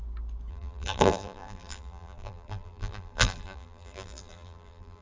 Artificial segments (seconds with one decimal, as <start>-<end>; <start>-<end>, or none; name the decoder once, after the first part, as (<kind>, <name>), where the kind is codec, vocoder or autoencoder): 0.5-5.0 (vocoder, BigVGAN v2)